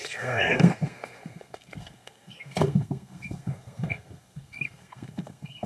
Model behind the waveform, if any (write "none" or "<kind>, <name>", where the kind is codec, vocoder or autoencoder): codec, SNAC